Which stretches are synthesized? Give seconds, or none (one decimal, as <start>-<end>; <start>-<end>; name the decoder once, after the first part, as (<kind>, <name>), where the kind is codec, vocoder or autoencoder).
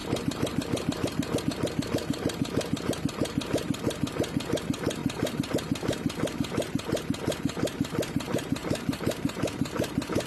5.0-5.5 (vocoder, BigVGAN v2); 8.6-10.3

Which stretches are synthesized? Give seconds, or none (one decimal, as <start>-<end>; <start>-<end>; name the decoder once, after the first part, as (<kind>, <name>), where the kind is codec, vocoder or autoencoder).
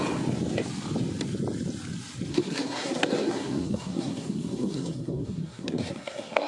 2.3-6.5 (codec, SNAC)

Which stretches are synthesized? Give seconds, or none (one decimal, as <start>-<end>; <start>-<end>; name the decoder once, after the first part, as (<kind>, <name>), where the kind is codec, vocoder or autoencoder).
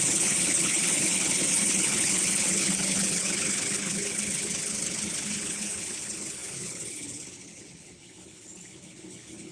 0.0-9.5 (codec, HILCodec)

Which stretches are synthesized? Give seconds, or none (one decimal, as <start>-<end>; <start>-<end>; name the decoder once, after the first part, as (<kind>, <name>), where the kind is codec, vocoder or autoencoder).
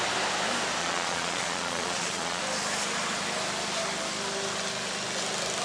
0.8-2.4 (vocoder, Vocos)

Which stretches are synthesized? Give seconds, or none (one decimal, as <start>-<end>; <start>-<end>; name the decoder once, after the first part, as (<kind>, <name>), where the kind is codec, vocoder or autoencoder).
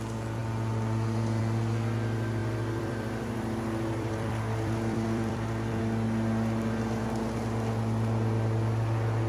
2.4-5.8 (vocoder, BigVGAN v2)